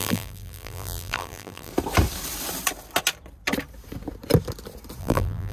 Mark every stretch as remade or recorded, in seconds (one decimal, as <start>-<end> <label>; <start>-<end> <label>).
0.0-1.7 remade; 1.7-5.0 recorded; 5.0-5.5 remade